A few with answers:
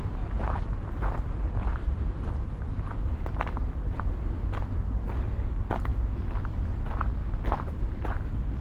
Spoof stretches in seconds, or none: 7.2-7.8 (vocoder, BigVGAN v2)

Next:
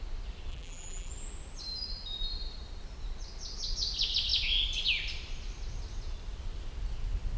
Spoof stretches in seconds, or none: 0.5-1.1 (vocoder, BigVGAN v2)

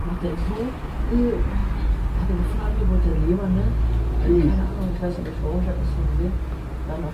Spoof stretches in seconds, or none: 1.6-2.3 (vocoder, BigVGAN v2)

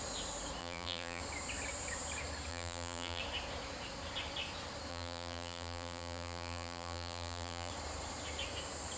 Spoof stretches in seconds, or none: 0.6-1.2 (vocoder, BigVGAN v2); 2.5-3.2; 4.9-7.7

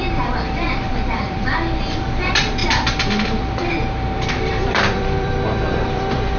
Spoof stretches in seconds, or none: 0.0-6.4 (vocoder, BigVGAN v2)

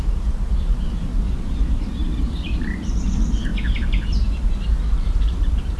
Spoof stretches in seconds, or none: 0.0-5.8 (vocoder, BigVGAN v2)

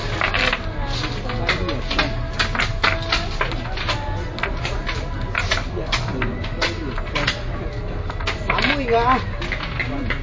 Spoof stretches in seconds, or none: none